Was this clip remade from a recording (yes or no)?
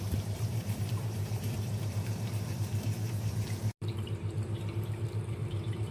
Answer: yes